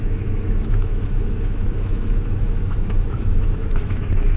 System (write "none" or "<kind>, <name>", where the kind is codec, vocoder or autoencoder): autoencoder, DAC-VAE